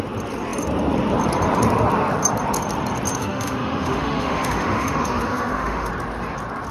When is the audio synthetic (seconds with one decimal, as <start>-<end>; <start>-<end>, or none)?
3.2-5.9